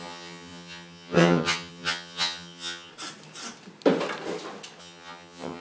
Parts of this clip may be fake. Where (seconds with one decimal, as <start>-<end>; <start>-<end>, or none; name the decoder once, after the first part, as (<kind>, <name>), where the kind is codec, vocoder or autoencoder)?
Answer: 0.0-2.9 (vocoder, HiFi-GAN); 4.8-5.6